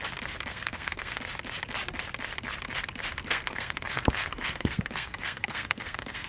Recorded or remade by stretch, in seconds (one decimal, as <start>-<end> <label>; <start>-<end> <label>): 0.0-0.5 recorded; 0.5-1.2 remade; 1.2-3.2 recorded; 3.2-6.3 remade

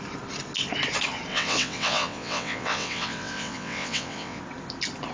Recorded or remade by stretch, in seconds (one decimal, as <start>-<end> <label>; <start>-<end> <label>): 0.0-1.3 recorded; 1.3-4.4 remade; 4.4-5.1 recorded

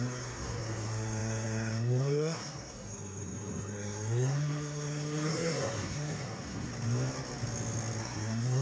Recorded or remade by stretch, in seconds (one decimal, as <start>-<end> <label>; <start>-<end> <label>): 0.0-6.7 remade; 6.7-8.0 recorded; 8.0-8.6 remade

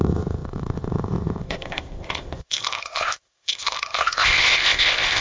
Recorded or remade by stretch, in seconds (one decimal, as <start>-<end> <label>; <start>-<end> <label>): 0.0-5.2 remade